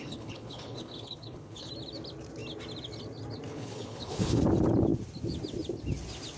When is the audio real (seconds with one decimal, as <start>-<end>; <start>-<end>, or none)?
1.7-3.5; 4.4-6.4